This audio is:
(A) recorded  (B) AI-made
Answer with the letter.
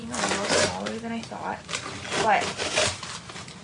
A